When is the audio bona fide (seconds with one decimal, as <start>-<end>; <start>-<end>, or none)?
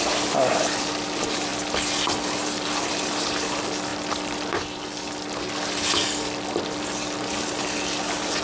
0.0-8.4